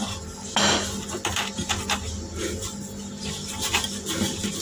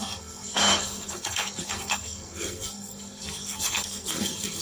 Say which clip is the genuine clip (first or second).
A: first